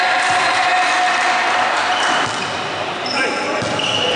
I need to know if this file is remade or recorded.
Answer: recorded